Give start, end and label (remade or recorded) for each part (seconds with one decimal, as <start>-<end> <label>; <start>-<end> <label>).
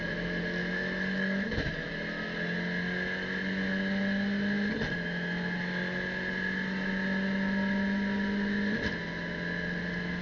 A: 0.0-0.6 recorded; 0.6-1.9 remade; 1.9-10.2 recorded